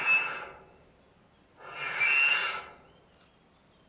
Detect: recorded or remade recorded